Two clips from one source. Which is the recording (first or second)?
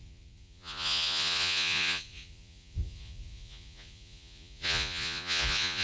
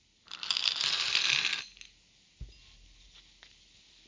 second